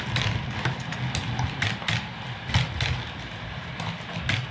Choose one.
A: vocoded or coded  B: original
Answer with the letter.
B